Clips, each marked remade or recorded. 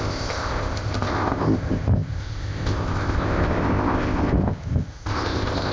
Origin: remade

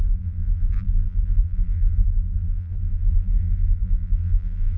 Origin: remade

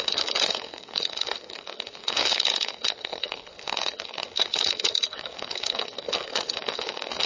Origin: remade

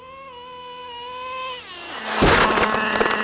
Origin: recorded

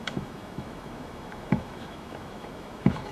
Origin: remade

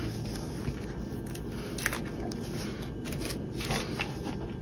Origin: recorded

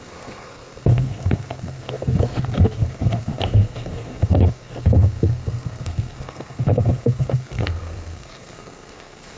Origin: remade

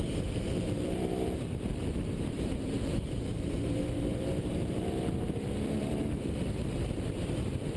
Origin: remade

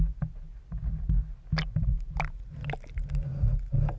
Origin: recorded